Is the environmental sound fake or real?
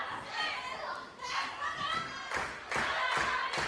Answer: real